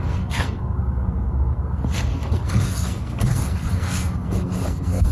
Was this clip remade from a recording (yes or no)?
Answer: yes